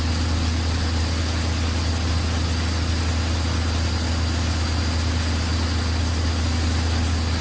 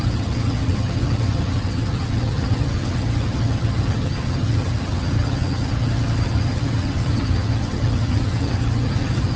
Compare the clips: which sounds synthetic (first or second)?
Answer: second